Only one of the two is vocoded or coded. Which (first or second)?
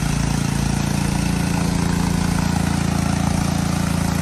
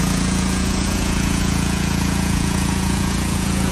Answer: second